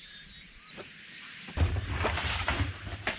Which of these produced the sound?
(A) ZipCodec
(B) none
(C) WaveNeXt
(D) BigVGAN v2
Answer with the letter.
B